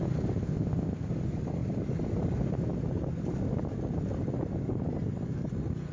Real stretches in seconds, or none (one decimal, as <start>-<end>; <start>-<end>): 0.0-0.4; 1.1-5.9